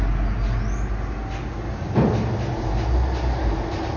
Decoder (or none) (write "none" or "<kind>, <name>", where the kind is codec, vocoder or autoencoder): none